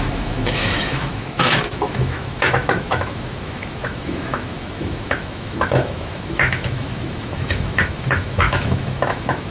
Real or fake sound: fake